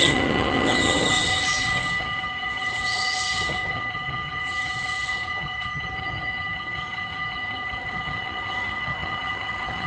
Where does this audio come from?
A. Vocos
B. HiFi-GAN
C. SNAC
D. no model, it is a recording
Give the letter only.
B